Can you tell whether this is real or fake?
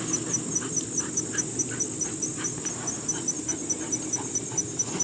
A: real